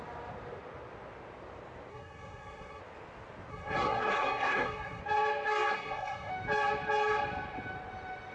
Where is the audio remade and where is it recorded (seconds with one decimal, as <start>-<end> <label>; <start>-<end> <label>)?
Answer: 0.0-1.9 recorded; 1.9-2.8 remade; 2.8-3.5 recorded; 3.5-5.0 remade; 5.0-5.7 recorded; 5.7-6.3 remade; 6.3-8.3 recorded